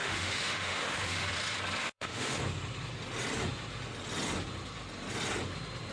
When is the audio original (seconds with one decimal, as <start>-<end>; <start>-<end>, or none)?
1.3-1.8; 2.4-5.9